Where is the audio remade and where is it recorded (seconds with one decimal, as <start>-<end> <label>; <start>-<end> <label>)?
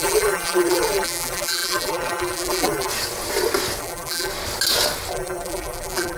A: 0.0-2.9 remade; 2.9-3.8 recorded; 3.8-4.3 remade; 4.3-5.1 recorded; 5.1-6.2 remade